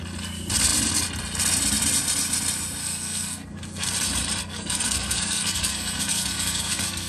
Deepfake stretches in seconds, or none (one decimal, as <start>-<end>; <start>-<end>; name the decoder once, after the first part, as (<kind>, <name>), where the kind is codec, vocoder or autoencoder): 2.8-3.9 (codec, SNAC); 4.4-7.1